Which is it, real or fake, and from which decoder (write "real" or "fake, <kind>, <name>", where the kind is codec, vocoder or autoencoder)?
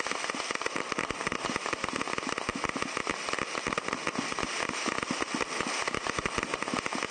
real